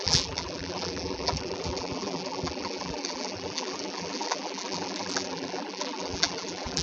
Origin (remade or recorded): remade